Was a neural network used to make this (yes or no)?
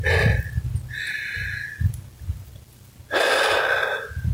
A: no